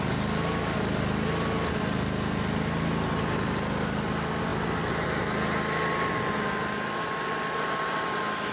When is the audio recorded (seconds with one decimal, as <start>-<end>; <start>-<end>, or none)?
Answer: 0.0-8.5